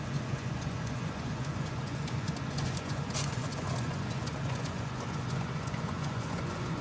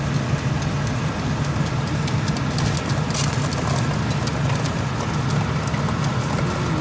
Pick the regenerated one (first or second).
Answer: first